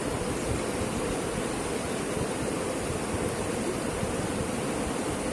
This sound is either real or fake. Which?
fake